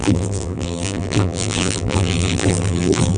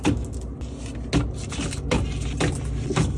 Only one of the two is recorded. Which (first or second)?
second